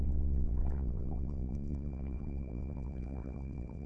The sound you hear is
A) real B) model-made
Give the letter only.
B